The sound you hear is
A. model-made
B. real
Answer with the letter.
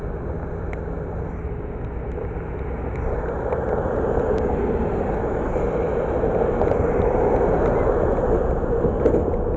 B